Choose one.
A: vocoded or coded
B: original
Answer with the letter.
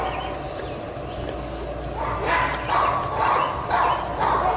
B